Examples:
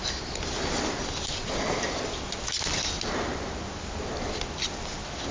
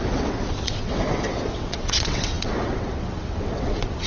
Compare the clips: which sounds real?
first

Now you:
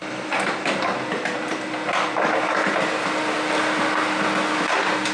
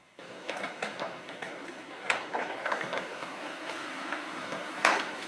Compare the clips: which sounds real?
first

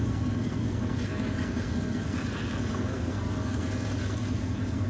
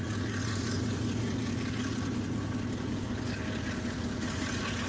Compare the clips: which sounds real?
second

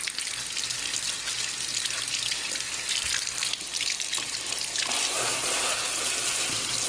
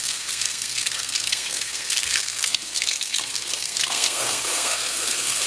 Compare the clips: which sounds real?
first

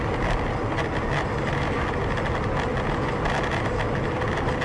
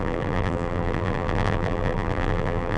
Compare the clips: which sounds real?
first